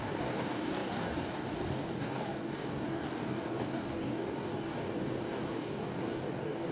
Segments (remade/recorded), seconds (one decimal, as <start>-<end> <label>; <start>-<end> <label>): 0.0-6.7 remade